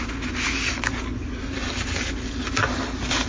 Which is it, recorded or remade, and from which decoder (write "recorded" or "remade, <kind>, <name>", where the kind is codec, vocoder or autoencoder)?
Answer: recorded